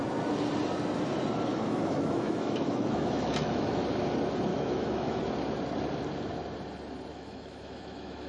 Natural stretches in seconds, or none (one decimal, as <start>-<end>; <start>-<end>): 0.0-1.5; 3.7-4.5; 5.2-7.1